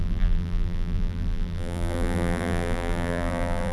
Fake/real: fake